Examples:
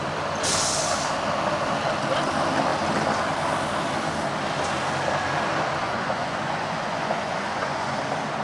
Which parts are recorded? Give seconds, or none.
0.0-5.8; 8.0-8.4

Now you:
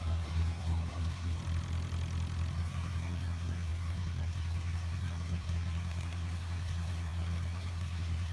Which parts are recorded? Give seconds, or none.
1.4-2.5

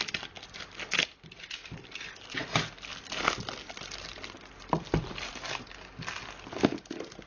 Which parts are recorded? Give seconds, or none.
0.0-7.3

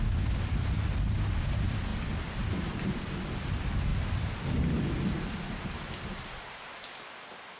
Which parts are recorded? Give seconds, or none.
0.0-1.9; 2.9-3.9; 6.4-7.6

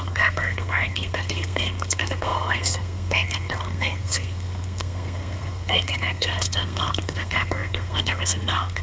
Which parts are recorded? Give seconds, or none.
none

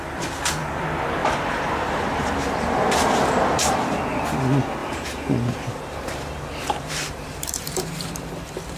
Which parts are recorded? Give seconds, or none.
0.0-1.2; 2.3-4.8; 8.3-8.8